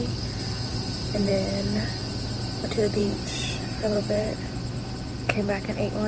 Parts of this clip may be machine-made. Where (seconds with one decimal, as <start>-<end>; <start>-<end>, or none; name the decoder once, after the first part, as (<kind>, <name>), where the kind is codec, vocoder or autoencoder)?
0.7-1.3 (vocoder, BigVGAN v2); 3.0-4.9